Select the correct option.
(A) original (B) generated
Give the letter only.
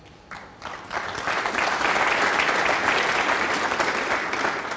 A